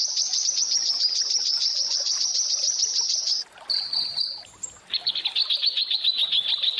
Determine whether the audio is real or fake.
fake